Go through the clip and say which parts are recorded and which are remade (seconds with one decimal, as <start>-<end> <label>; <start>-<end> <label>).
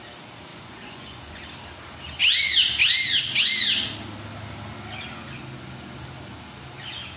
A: 0.0-0.5 recorded; 0.5-1.4 remade; 1.4-7.2 recorded